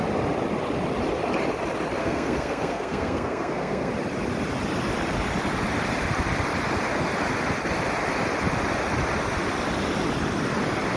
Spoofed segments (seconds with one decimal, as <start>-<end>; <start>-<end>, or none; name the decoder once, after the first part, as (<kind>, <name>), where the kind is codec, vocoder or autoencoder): 2.0-3.9 (codec, SNAC)

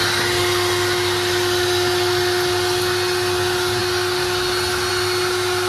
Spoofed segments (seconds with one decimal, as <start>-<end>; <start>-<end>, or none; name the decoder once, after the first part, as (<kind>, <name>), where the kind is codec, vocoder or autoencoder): none

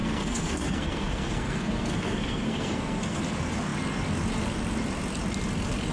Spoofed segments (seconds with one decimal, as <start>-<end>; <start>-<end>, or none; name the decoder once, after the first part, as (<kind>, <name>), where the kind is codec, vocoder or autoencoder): 0.0-3.2 (codec, SNAC)

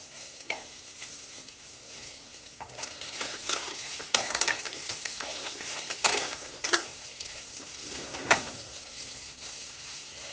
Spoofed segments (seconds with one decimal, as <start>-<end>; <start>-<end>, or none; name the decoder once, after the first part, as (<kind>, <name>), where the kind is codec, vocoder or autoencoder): 0.0-10.3 (codec, SNAC)

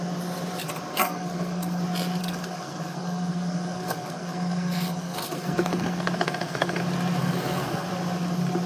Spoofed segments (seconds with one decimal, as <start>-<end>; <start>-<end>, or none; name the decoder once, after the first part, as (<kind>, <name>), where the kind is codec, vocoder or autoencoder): 0.9-1.8 (codec, SNAC); 2.2-6.8; 7.2-7.9